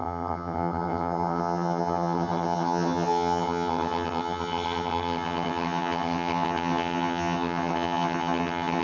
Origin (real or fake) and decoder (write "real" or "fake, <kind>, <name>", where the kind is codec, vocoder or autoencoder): fake, vocoder, HiFi-GAN